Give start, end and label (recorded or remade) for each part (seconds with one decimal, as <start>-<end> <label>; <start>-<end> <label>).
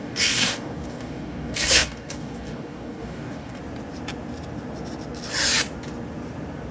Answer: 0.0-3.6 remade; 3.6-6.7 recorded